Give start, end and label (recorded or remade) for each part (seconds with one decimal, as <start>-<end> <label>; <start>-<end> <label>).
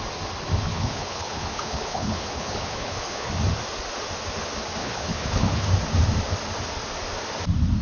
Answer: 0.0-0.7 recorded; 0.7-3.3 remade; 3.3-4.8 recorded; 4.8-5.7 remade; 5.7-7.8 recorded